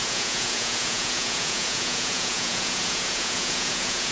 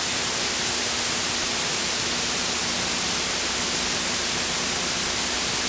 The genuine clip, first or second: second